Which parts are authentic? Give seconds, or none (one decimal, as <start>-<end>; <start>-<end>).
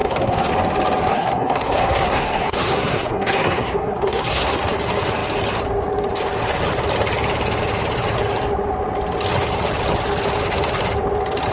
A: 0.5-1.1; 4.6-11.5